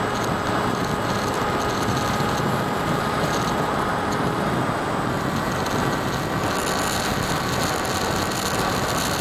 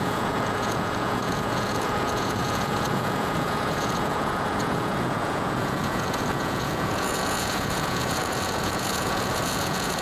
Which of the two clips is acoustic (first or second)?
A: first